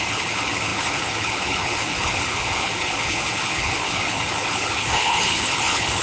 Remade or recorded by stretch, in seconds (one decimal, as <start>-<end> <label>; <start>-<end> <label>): 0.0-6.0 remade